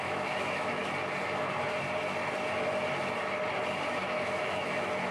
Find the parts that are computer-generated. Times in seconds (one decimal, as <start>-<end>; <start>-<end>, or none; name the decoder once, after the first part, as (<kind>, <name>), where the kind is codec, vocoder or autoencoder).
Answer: 0.0-0.8 (autoencoder, DAC-VAE); 3.9-5.1